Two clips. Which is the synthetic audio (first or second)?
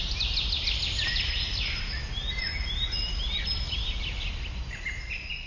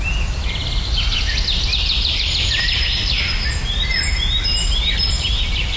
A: second